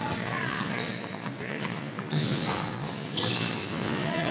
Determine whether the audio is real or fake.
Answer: fake